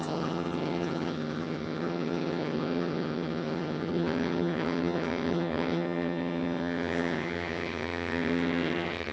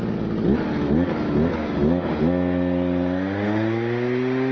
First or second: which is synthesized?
first